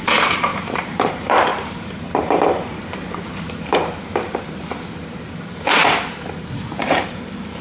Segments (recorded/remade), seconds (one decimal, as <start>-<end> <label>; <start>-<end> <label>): 0.0-5.8 remade; 5.8-6.8 recorded; 6.8-7.6 remade